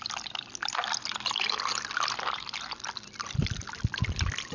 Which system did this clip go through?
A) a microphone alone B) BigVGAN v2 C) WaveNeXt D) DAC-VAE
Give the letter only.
A